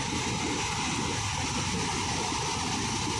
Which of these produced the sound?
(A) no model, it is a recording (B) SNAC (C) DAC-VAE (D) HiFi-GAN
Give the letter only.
A